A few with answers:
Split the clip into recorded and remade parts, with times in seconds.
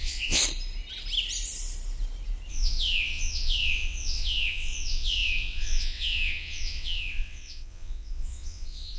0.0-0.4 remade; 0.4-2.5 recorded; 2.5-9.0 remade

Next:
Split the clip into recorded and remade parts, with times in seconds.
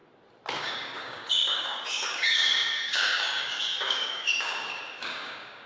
0.0-0.6 recorded; 0.6-5.7 remade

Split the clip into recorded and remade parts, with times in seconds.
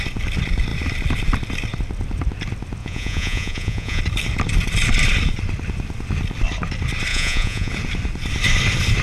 0.0-2.8 recorded; 2.8-4.0 remade; 4.0-7.1 recorded; 7.1-7.7 remade; 7.7-9.0 recorded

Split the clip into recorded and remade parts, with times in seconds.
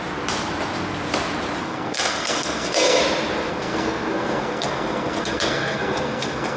0.0-1.6 recorded; 1.6-3.0 remade; 3.0-3.5 recorded; 3.5-6.6 remade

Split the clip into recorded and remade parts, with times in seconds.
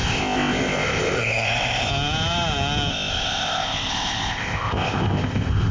0.0-1.9 remade; 1.9-2.9 recorded; 2.9-5.7 remade